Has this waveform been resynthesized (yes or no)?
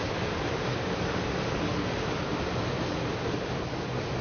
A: no